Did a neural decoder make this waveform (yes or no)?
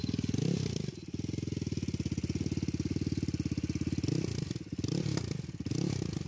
no